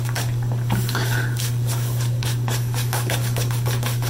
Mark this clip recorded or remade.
remade